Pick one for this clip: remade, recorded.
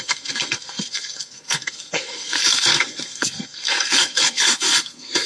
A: remade